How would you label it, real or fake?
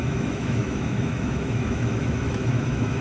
fake